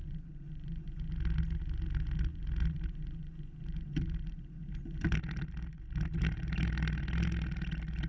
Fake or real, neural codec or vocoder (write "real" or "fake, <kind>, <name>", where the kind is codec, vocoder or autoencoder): real